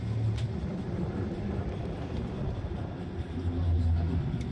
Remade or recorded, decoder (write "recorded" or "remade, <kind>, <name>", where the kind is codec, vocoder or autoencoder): recorded